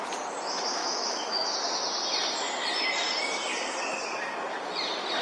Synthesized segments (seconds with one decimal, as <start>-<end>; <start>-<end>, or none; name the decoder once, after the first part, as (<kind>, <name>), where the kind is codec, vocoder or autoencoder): 0.8-1.5 (autoencoder, DAC-VAE)